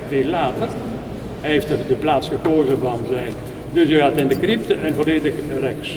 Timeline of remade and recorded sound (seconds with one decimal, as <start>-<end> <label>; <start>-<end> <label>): 0.0-2.6 recorded; 2.6-4.3 remade; 4.3-4.8 recorded; 4.8-5.6 remade; 5.6-6.0 recorded